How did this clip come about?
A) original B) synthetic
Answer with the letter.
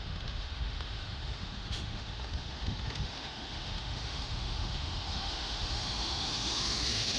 B